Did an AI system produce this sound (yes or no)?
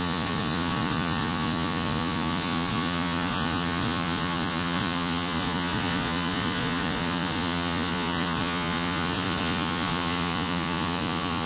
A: yes